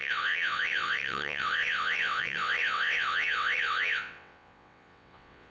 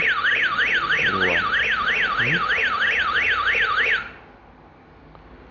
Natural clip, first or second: second